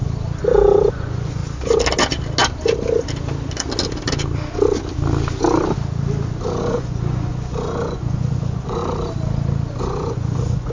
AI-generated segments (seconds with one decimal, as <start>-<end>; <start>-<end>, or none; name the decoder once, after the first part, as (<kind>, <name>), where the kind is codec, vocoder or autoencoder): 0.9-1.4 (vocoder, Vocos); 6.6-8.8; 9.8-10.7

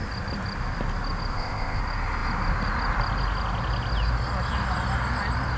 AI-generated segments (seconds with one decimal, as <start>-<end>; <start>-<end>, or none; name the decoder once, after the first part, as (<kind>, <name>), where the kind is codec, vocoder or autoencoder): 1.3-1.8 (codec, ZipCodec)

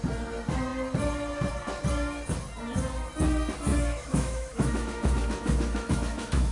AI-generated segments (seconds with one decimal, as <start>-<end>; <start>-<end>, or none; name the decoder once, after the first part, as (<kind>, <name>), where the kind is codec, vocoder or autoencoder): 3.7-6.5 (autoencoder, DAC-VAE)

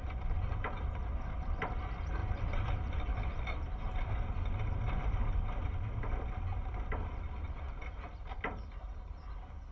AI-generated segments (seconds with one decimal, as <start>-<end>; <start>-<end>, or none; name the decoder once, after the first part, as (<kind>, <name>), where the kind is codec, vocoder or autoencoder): none

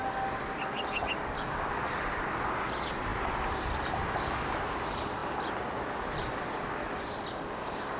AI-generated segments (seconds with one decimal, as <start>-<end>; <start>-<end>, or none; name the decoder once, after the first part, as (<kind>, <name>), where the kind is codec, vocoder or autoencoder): 3.1-4.2 (vocoder, BigVGAN v2)

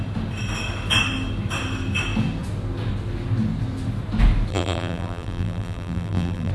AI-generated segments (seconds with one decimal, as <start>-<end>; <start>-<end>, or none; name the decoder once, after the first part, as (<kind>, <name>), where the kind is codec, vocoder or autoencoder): 4.5-6.5 (vocoder, BigVGAN v2)

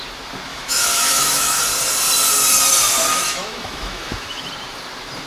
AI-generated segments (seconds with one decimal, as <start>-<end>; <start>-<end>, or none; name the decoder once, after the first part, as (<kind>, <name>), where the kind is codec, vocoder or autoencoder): 0.5-1.6 (autoencoder, DAC-VAE); 3.1-4.5